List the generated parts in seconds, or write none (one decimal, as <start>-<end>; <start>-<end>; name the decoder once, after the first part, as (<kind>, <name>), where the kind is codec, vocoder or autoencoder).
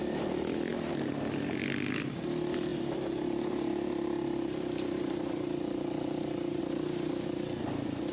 2.7-6.6 (vocoder, BigVGAN v2)